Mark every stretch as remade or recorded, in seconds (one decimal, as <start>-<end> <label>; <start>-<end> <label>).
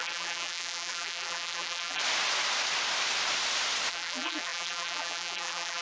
0.0-2.0 remade; 2.0-3.9 recorded; 3.9-5.8 remade